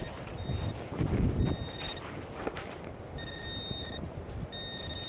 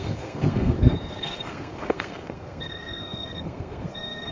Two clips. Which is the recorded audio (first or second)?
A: first